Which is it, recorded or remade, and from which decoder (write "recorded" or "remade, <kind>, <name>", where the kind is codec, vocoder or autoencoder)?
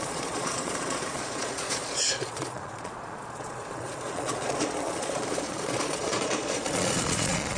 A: remade, vocoder, Vocos